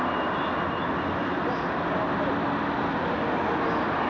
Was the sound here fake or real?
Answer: real